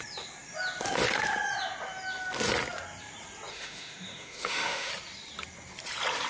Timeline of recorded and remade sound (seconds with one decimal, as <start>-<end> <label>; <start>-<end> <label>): 0.0-3.5 recorded; 3.5-4.9 remade; 4.9-6.3 recorded